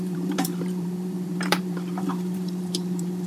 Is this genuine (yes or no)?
no